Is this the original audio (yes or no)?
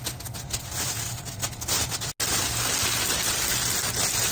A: yes